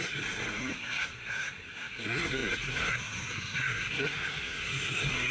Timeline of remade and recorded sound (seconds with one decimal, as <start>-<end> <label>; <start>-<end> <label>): 0.0-5.3 remade